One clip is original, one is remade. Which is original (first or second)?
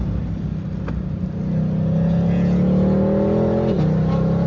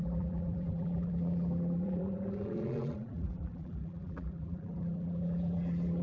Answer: first